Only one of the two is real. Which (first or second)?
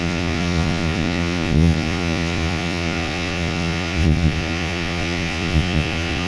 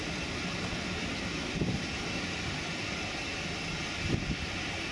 second